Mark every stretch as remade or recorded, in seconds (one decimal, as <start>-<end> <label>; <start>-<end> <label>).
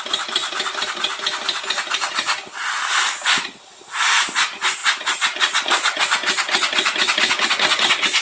0.0-8.2 recorded